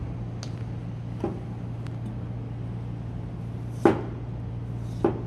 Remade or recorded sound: recorded